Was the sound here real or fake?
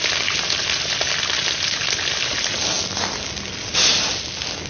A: real